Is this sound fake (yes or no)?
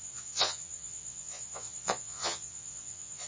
yes